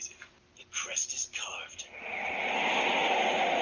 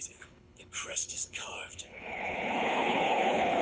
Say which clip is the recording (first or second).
first